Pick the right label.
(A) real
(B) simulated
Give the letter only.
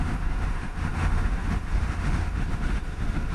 B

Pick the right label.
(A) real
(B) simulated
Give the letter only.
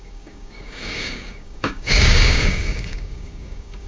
B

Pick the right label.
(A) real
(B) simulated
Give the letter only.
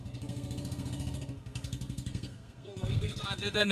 B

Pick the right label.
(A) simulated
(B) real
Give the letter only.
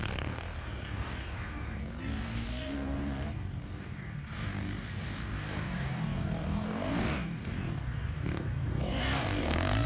A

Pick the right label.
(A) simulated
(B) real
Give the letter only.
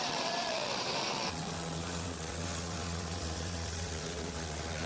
A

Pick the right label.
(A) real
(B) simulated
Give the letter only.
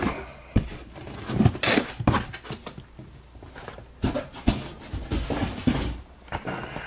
A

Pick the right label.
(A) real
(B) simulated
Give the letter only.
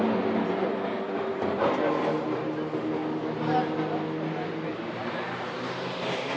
A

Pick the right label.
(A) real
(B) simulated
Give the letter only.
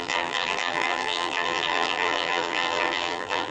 B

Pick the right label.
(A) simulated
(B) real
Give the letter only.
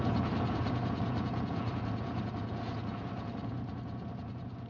A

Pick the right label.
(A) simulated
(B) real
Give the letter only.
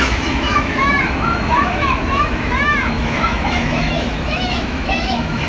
A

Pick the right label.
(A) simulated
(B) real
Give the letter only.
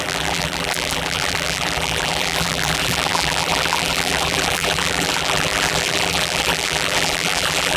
A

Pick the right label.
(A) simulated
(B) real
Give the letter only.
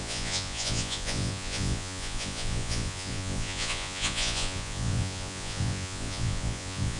A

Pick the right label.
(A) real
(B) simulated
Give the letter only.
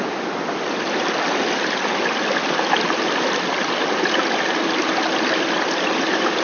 A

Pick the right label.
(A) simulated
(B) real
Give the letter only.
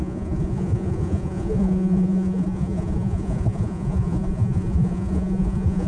A